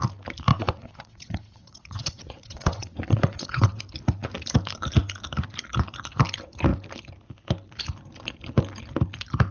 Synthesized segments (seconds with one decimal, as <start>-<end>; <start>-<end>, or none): 0.5-3.8